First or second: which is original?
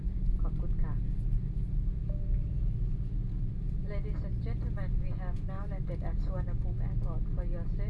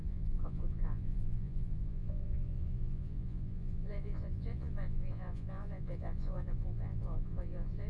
first